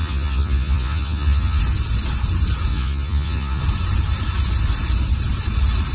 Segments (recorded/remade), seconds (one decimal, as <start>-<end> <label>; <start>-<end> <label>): 0.0-1.6 remade; 1.6-2.7 recorded; 2.7-3.6 remade; 3.6-5.9 recorded